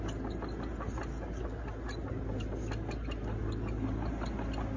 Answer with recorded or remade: recorded